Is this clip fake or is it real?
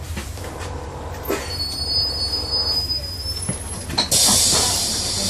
real